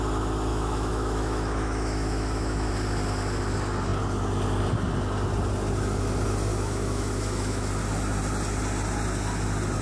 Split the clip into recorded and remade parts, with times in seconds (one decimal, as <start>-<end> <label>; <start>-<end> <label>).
0.0-0.5 recorded; 0.5-2.7 remade; 2.7-6.5 recorded; 6.5-7.7 remade; 7.7-9.8 recorded